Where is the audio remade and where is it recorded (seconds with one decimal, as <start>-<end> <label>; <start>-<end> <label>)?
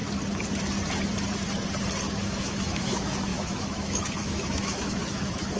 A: 0.0-2.1 recorded; 2.1-5.6 remade